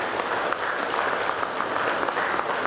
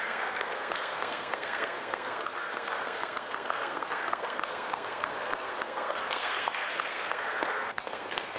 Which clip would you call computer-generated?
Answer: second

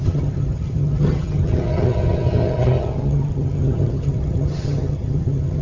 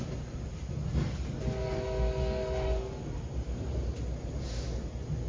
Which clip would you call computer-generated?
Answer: first